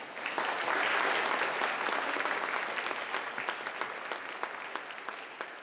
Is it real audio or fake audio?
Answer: real